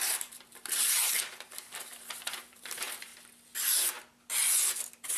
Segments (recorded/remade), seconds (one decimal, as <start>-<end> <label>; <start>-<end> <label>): 0.0-1.9 remade; 1.9-2.4 recorded; 2.4-3.1 remade; 3.1-4.8 recorded; 4.8-5.2 remade